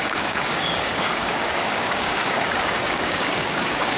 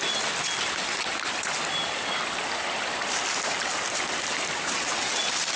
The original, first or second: second